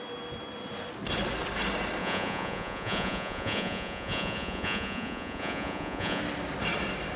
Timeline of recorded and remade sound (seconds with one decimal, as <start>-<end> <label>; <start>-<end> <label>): 0.0-2.0 recorded; 2.0-6.2 remade; 6.2-7.2 recorded